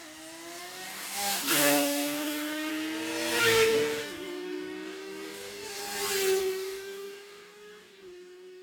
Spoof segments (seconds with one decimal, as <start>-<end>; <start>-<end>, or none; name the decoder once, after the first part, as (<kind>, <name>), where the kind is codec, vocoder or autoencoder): 0.6-2.7 (codec, DAC); 3.4-5.8; 6.4-8.6